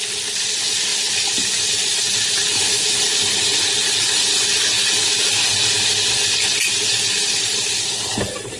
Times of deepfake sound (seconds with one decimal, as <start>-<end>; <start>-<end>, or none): none